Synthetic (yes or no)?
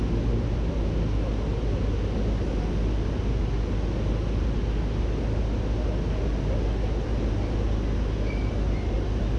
no